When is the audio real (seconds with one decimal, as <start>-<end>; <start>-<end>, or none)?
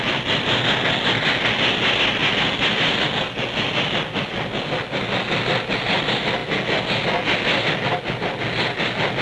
0.0-9.2